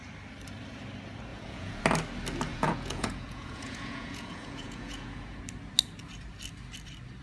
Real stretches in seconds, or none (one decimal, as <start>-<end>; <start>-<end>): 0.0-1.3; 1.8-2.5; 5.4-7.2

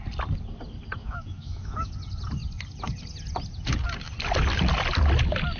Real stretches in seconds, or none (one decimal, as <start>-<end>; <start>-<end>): 0.0-1.0; 1.9-5.6

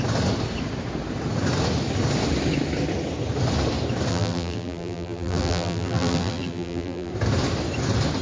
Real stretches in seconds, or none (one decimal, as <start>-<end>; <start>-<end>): 0.0-4.1; 7.1-8.2

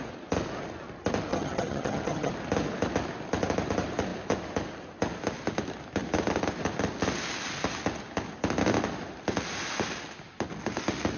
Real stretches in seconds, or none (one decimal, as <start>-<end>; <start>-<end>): 0.0-1.3; 2.3-11.2

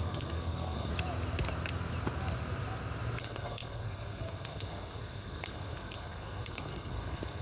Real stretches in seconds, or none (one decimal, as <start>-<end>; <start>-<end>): 0.9-3.2

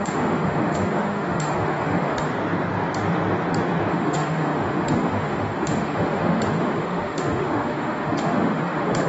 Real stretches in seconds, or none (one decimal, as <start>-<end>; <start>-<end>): 2.3-3.9